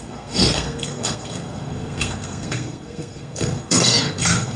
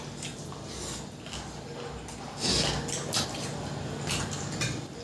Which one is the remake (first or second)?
first